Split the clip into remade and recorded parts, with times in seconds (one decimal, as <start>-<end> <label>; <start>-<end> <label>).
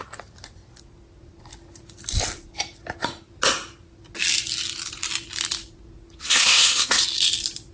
0.0-6.2 recorded; 6.2-7.0 remade; 7.0-7.7 recorded